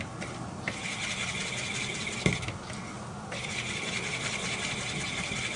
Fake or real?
real